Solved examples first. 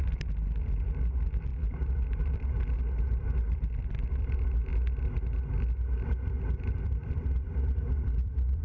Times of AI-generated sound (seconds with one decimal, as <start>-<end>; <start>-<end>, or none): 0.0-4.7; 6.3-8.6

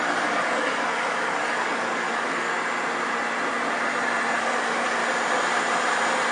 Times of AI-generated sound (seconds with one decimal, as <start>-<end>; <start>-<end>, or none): 0.0-2.5; 4.4-5.0

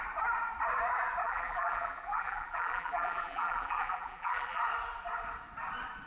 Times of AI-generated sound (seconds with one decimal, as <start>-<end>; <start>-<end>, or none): 1.2-4.6